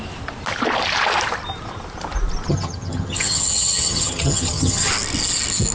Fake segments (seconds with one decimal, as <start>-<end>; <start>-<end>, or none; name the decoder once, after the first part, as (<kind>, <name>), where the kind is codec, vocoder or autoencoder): 2.5-4.9 (vocoder, HiFi-GAN)